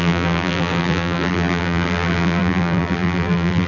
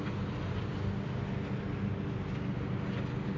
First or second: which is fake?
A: first